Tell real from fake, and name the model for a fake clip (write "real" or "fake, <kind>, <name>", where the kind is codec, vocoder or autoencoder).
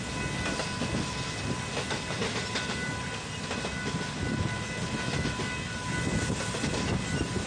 real